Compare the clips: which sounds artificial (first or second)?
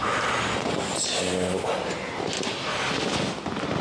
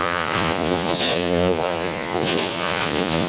second